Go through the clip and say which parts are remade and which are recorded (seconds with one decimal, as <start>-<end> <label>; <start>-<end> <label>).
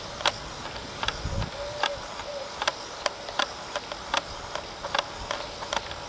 0.0-6.1 recorded